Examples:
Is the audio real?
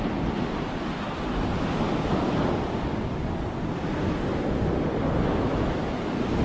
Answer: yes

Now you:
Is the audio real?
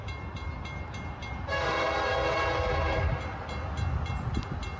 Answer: yes